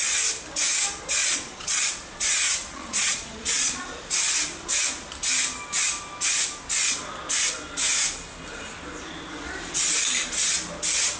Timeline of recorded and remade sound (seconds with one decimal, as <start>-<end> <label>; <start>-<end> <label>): 0.0-1.2 recorded; 1.2-2.2 remade; 2.2-2.6 recorded; 2.6-3.8 remade; 3.8-11.2 recorded

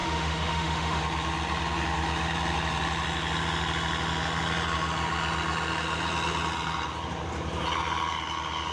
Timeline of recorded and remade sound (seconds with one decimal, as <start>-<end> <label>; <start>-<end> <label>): 0.0-1.0 remade; 1.0-8.7 recorded